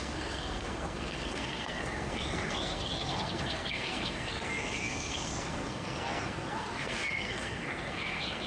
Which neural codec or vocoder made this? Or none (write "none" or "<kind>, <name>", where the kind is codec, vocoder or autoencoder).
codec, SNAC